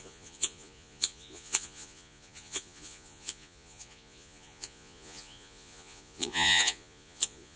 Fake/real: fake